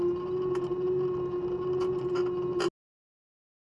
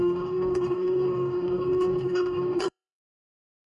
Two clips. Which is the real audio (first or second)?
first